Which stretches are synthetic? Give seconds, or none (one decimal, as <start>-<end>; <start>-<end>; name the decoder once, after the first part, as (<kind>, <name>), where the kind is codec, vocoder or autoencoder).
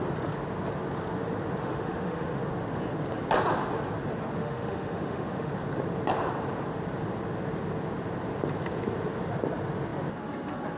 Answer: 1.6-2.4 (autoencoder, DAC-VAE); 4.4-5.5